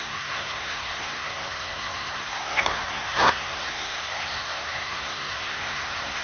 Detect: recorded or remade remade